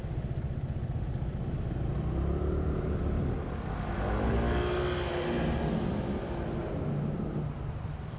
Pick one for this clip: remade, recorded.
recorded